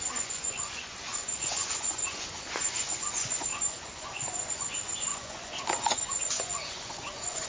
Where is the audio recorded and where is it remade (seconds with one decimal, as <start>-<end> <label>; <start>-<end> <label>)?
0.0-7.5 remade